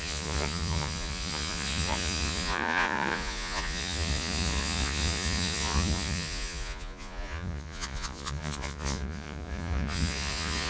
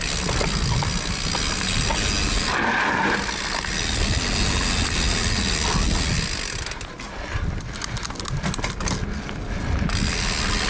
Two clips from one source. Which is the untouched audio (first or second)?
second